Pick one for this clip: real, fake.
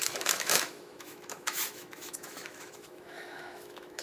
fake